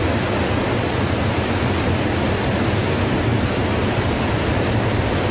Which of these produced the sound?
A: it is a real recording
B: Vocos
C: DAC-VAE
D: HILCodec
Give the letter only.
A